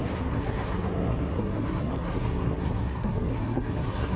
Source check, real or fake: fake